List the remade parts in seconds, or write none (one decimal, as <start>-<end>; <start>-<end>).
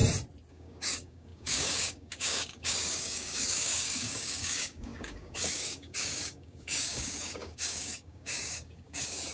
0.5-9.3